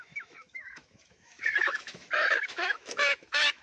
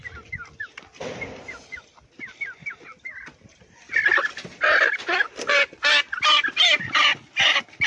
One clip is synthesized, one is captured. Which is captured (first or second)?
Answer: second